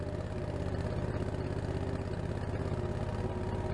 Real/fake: real